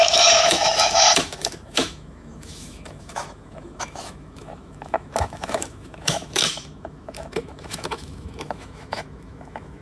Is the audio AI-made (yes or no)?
yes